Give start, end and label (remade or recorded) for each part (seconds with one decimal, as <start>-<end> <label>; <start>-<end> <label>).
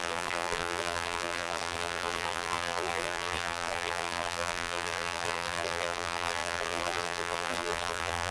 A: 0.0-8.3 remade